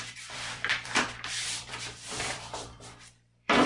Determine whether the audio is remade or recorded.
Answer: remade